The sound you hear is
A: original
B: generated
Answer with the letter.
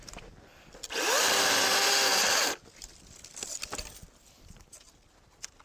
A